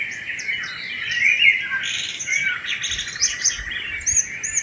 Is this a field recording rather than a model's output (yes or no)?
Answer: yes